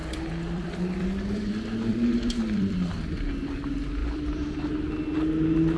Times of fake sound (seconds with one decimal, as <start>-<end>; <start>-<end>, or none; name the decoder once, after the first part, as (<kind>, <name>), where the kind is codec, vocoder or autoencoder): 0.0-1.5 (vocoder, BigVGAN v2); 1.9-2.9; 4.0-4.6